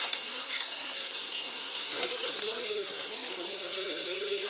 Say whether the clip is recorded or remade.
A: remade